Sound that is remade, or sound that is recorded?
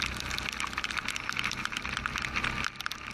recorded